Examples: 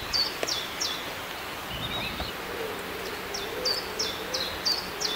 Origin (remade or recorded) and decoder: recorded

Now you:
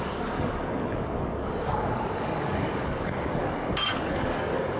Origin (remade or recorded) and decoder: remade, codec, DAC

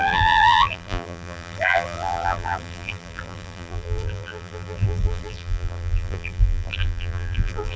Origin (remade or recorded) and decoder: remade, vocoder, BigVGAN v2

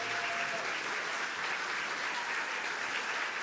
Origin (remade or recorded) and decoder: recorded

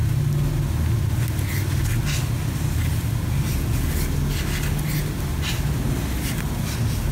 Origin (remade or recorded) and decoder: recorded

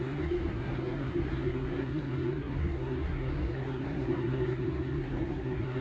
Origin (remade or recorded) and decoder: remade, codec, SNAC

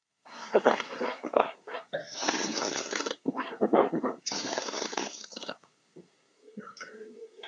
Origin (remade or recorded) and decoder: remade, codec, SNAC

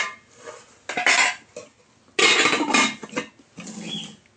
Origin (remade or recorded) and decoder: recorded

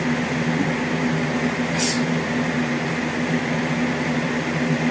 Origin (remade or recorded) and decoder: recorded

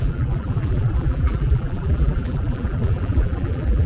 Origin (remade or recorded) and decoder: remade, vocoder, BigVGAN v2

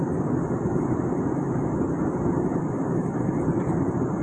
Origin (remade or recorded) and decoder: remade, vocoder, BigVGAN v2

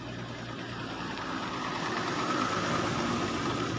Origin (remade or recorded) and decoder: recorded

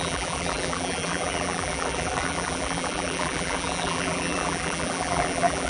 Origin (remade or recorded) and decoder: remade, vocoder, BigVGAN v2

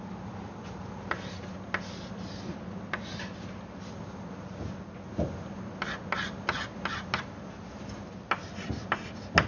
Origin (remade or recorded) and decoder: recorded